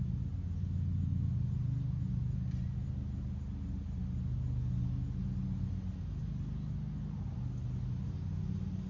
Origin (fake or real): real